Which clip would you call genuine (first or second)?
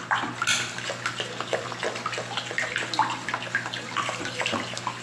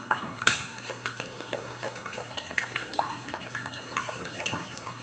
first